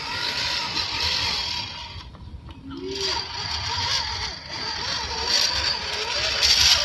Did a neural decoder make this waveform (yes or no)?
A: no